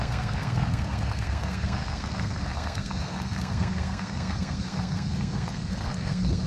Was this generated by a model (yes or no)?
yes